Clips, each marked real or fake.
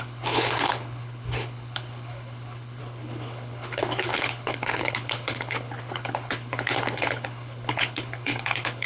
fake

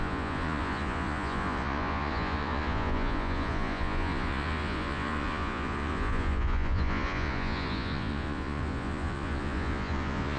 fake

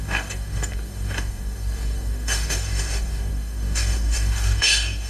fake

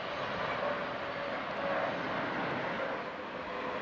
real